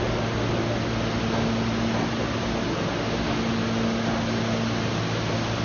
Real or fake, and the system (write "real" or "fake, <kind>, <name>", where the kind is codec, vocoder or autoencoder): real